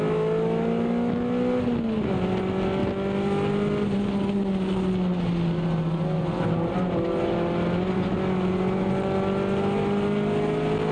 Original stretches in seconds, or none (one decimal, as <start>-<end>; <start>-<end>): 0.0-10.9